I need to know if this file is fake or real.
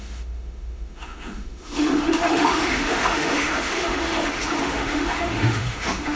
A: fake